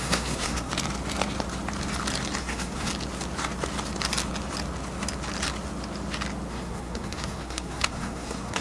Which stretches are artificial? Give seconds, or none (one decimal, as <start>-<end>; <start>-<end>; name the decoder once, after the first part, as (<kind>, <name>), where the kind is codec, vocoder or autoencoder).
0.0-0.7 (codec, SNAC); 2.4-2.9; 6.5-8.6